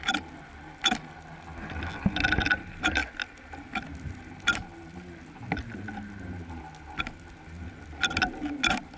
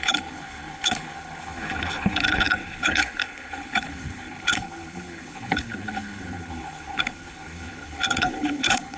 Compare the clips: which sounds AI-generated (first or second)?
second